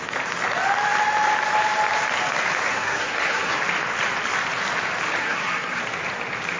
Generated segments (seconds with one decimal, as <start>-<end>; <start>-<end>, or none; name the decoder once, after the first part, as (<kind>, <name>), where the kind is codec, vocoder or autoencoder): 2.7-3.6 (codec, SNAC); 5.2-5.8

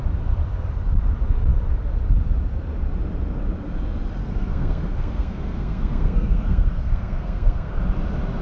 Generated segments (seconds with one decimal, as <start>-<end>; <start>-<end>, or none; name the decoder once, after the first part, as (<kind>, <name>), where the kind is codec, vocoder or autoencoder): 4.2-7.8 (codec, SNAC)

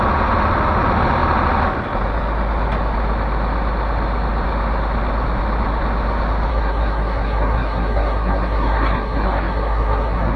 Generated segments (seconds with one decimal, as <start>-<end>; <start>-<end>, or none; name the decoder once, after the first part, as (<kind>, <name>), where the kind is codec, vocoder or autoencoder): 6.5-10.4 (codec, SNAC)

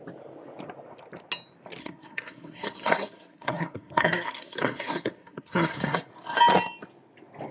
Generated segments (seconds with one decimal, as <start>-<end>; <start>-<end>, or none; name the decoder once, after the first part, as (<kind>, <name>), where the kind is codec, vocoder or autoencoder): 1.8-6.1 (codec, SNAC)

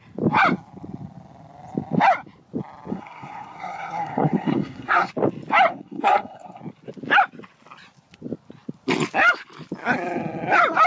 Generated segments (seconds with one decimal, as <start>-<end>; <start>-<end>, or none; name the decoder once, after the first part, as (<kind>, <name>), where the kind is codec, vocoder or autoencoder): 2.9-5.1 (codec, SNAC); 5.7-6.6

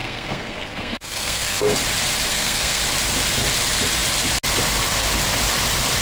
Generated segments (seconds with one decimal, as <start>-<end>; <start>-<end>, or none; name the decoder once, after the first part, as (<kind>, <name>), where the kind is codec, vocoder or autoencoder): 0.0-1.8 (codec, SNAC); 2.3-2.8

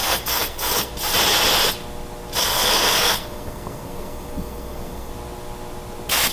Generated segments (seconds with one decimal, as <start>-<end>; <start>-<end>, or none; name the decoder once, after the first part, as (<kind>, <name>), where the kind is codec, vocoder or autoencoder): 0.0-0.9 (codec, SNAC); 2.4-5.1